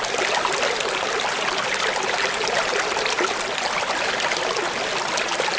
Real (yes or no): yes